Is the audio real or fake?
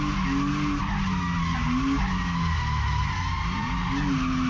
real